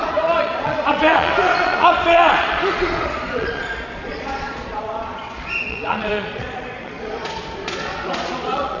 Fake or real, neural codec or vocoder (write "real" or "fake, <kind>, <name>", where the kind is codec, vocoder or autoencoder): fake, vocoder, Vocos